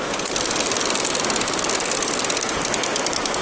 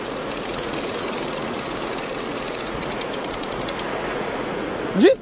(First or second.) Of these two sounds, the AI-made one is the second